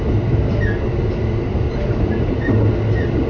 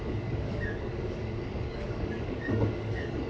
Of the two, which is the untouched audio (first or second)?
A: first